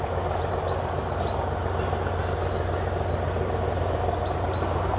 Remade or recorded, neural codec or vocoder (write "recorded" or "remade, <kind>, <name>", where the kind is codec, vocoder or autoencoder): recorded